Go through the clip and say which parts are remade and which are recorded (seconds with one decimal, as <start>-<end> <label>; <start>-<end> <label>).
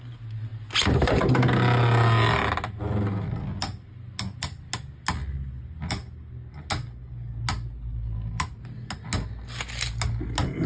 0.0-10.7 recorded